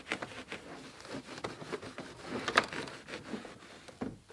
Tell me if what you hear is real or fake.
real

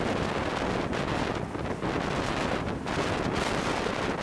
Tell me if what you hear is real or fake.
real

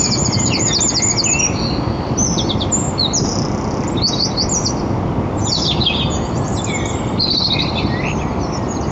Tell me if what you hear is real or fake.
real